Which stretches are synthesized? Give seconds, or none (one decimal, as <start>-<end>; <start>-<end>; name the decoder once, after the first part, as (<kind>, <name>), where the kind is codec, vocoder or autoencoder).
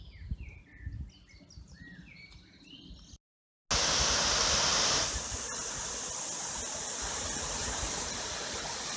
7.6-8.3 (vocoder, BigVGAN v2)